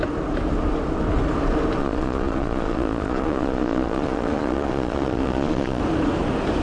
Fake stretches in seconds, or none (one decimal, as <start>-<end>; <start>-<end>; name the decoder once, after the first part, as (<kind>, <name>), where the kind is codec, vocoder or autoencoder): 1.8-5.8 (vocoder, Vocos)